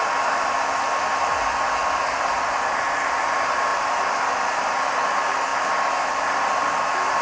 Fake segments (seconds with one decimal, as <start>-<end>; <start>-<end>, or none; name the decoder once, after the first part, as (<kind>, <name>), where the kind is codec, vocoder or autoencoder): none